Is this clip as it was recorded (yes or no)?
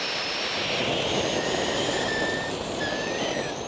yes